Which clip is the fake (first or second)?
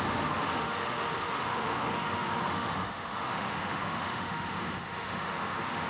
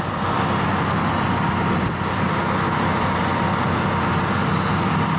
first